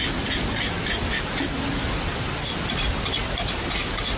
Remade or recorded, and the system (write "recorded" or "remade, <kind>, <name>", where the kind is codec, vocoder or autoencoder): recorded